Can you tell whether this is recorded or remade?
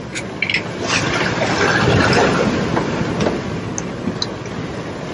recorded